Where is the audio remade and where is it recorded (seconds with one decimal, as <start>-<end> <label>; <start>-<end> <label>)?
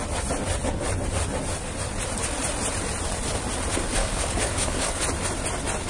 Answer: 0.0-4.0 recorded; 4.0-5.0 remade; 5.0-5.9 recorded